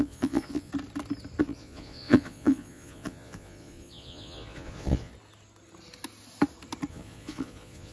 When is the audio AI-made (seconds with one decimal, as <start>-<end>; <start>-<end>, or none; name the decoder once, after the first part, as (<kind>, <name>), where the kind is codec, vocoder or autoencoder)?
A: 0.0-0.7 (vocoder, Vocos); 1.4-5.1; 6.9-7.9